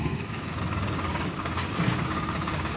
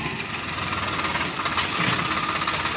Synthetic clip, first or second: first